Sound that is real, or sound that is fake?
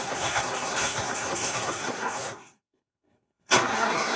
fake